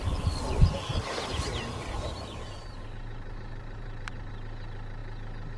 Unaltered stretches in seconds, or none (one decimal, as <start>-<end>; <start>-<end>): 0.0-0.9; 4.3-5.6